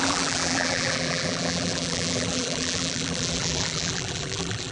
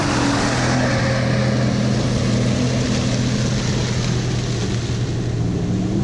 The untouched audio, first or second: second